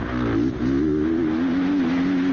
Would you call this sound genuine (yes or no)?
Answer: yes